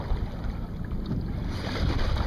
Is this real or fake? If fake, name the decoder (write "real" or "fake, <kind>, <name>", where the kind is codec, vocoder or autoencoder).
real